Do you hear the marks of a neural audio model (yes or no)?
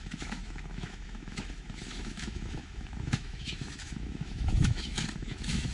yes